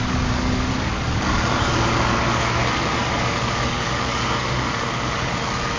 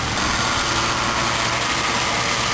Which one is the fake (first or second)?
first